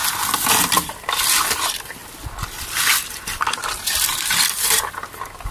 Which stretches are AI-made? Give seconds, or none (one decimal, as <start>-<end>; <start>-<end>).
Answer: 0.0-5.5